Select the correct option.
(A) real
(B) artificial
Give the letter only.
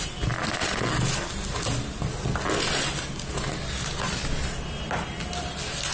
A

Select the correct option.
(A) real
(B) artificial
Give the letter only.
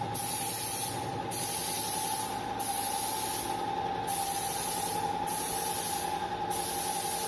A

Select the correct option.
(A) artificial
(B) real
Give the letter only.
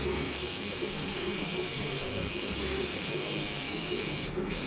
A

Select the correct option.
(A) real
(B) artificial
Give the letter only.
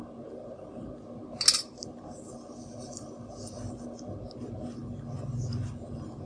A